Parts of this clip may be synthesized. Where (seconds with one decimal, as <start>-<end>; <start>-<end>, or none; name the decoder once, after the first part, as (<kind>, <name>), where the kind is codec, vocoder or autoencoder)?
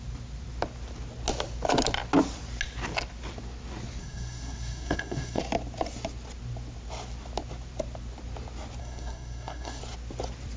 4.0-5.4 (codec, SNAC); 8.8-9.8